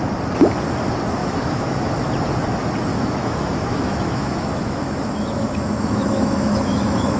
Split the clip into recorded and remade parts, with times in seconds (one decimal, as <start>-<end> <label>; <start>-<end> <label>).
0.0-1.2 recorded; 1.2-2.1 remade; 2.1-2.9 recorded; 2.9-7.2 remade